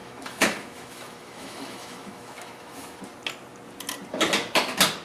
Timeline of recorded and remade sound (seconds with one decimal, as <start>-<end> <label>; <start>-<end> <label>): 0.0-3.0 remade; 3.0-5.0 recorded